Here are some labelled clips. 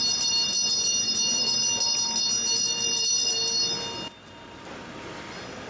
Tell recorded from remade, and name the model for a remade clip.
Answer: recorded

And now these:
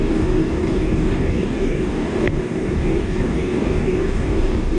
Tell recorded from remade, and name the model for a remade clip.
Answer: remade, codec, DAC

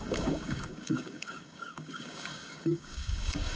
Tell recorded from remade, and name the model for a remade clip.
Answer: remade, codec, DAC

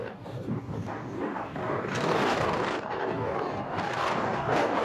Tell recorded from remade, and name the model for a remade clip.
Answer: remade, codec, DAC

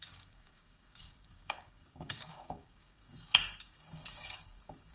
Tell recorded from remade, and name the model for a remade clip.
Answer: remade, codec, DAC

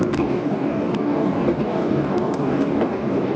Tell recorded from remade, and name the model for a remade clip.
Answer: remade, codec, DAC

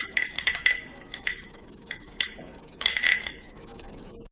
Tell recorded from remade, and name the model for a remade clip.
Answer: remade, codec, DAC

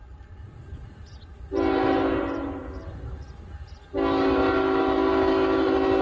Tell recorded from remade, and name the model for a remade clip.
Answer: recorded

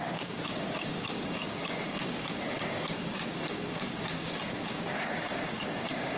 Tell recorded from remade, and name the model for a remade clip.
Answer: remade, codec, DAC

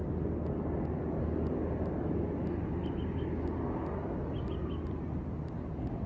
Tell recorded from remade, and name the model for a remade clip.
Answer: recorded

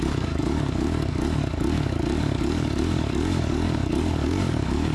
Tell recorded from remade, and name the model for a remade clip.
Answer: remade, codec, DAC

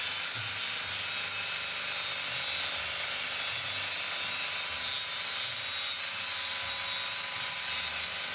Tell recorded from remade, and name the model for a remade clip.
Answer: recorded